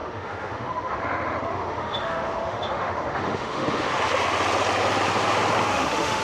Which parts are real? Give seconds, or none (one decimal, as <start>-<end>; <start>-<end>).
1.0-1.5; 4.0-5.7